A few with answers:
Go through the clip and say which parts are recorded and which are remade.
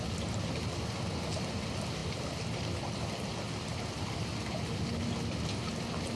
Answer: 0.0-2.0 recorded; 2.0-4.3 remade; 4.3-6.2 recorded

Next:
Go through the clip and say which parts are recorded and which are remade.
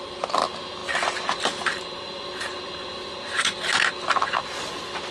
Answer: 0.0-5.1 recorded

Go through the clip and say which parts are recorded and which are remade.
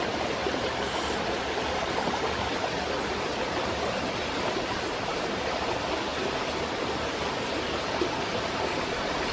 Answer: 0.0-6.1 recorded; 6.1-7.4 remade; 7.4-9.3 recorded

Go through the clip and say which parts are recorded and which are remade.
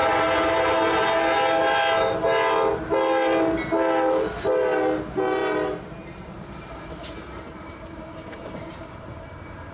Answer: 0.0-5.0 recorded; 5.0-9.7 remade